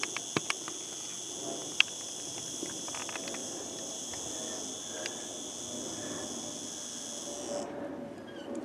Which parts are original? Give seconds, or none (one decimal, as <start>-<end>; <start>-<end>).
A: 0.0-1.6; 3.0-3.4; 4.2-8.6